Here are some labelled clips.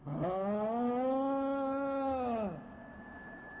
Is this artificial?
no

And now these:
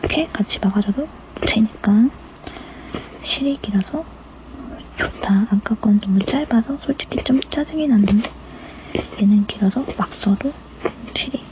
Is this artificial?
no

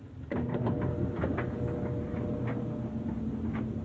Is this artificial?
no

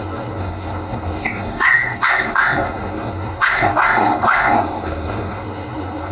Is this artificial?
yes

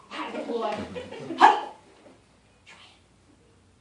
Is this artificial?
no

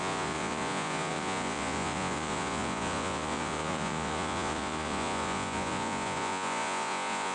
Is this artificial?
yes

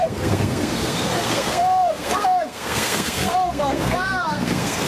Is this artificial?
yes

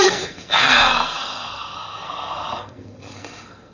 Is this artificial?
yes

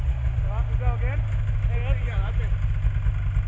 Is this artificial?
no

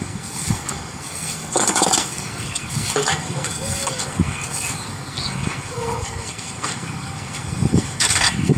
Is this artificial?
yes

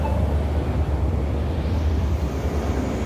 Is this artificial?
no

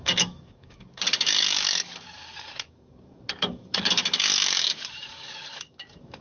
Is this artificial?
yes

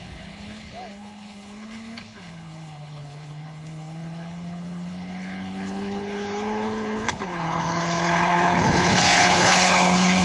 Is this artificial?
yes